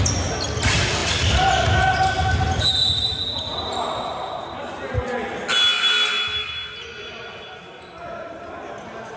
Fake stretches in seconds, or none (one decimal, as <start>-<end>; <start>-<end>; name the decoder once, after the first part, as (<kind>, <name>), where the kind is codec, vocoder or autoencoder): none